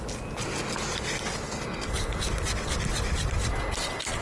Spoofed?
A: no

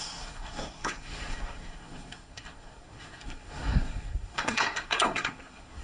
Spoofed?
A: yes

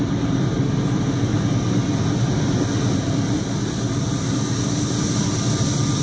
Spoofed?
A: no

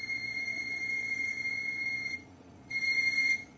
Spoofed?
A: yes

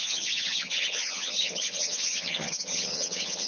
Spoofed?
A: yes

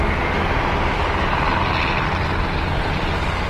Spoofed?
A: no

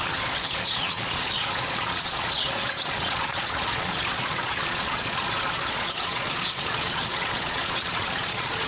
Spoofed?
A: yes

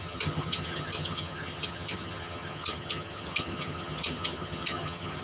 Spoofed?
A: yes